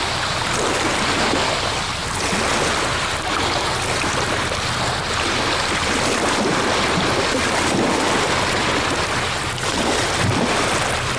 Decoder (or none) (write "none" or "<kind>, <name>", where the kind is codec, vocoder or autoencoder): none